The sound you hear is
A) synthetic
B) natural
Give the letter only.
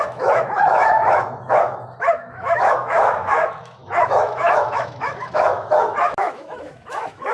A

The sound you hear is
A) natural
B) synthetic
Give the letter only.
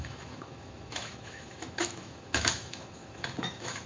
B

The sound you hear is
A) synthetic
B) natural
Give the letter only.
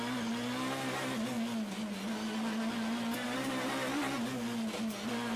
B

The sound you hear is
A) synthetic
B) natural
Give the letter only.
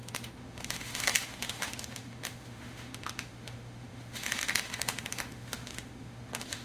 A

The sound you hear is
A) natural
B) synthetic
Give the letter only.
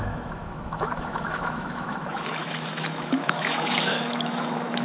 B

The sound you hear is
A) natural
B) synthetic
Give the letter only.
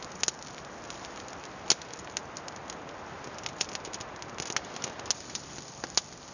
A